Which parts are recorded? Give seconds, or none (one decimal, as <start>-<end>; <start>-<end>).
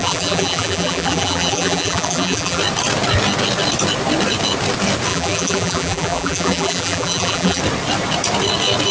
2.6-5.1; 7.6-8.9